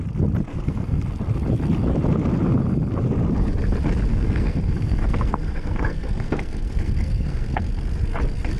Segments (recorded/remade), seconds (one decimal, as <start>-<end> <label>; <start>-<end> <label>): 0.0-0.5 recorded; 0.5-1.0 remade; 1.0-4.1 recorded; 4.1-7.7 remade; 7.7-8.6 recorded